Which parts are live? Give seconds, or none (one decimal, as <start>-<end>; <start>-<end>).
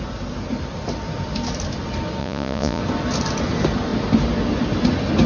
0.0-2.2; 2.8-5.3